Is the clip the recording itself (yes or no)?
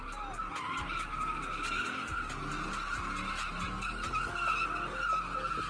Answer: yes